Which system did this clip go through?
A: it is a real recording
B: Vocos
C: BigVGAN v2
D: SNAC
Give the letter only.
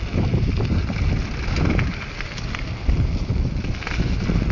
A